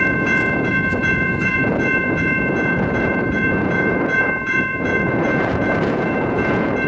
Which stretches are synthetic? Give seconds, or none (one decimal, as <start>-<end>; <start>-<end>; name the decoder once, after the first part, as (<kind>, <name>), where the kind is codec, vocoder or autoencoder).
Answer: 0.0-6.9 (vocoder, Vocos)